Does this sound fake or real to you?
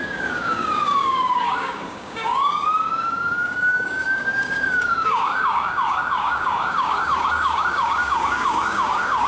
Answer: fake